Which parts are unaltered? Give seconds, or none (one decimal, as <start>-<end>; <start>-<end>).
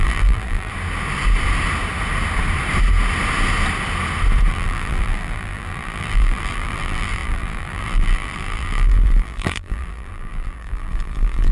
0.7-4.5